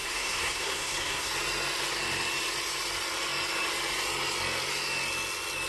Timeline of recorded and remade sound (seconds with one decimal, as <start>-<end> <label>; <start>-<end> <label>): 0.0-1.3 remade; 1.3-5.7 recorded